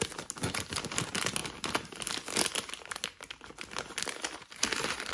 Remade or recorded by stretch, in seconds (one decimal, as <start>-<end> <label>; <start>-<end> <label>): 0.0-5.1 recorded